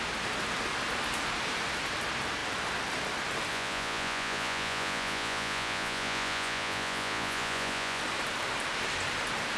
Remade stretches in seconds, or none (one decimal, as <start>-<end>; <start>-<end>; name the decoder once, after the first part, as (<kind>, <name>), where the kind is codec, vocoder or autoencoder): 3.5-8.0 (vocoder, Vocos)